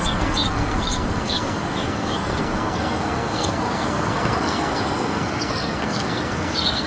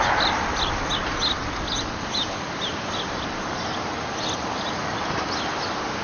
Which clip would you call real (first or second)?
second